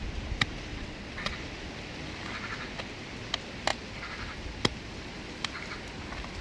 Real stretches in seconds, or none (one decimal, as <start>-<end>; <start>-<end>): 0.0-0.7; 1.3-6.4